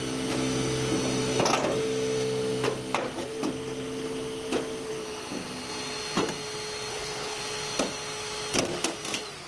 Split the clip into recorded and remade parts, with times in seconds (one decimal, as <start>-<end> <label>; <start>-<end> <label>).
0.0-6.9 recorded; 6.9-7.4 remade; 7.4-9.5 recorded